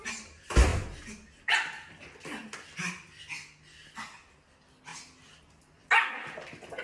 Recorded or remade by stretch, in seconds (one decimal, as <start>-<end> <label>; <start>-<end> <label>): 0.0-6.8 recorded